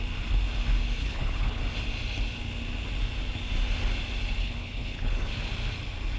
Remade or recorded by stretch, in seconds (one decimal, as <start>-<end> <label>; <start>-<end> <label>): 0.0-1.0 recorded; 1.0-1.6 remade; 1.6-4.4 recorded; 4.4-5.3 remade; 5.3-6.2 recorded